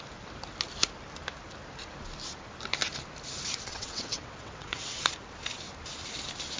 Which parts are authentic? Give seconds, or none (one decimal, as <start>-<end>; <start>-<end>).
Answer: 0.0-3.7; 5.0-6.6